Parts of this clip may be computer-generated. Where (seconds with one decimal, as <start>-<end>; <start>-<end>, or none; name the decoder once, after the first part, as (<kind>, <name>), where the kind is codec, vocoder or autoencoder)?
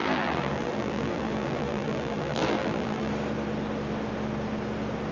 0.0-3.1 (vocoder, BigVGAN v2)